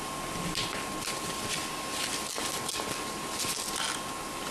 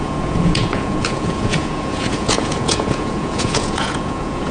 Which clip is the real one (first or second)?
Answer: first